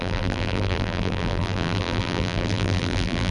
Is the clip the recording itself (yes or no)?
no